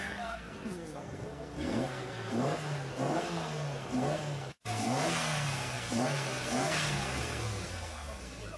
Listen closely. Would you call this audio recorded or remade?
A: remade